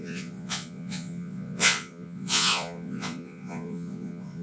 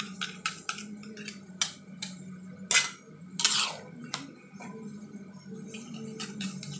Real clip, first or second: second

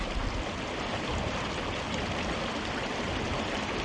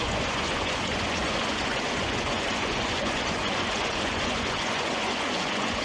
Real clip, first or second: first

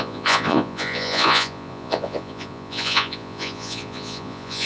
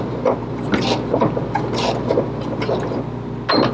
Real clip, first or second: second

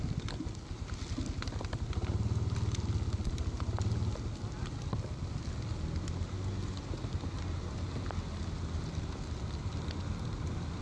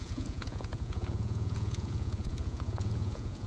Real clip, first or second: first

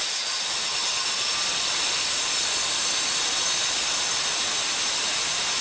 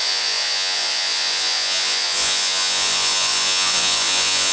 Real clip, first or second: first